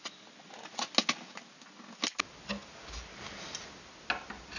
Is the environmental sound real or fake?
real